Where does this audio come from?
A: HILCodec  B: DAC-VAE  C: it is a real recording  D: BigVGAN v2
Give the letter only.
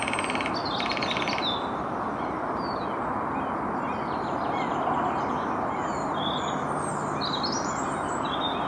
C